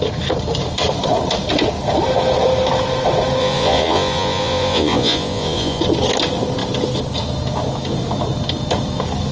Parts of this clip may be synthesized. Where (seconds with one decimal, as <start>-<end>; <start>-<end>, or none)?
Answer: 3.4-5.8